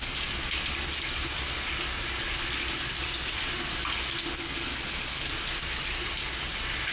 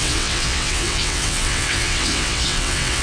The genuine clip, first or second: first